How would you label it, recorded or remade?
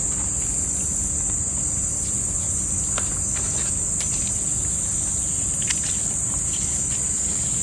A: recorded